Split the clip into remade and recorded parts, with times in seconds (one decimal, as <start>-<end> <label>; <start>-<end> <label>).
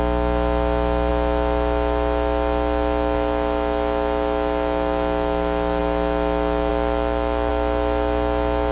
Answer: 0.0-8.7 recorded